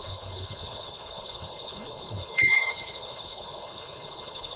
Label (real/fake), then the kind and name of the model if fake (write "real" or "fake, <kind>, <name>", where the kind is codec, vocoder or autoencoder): fake, codec, HILCodec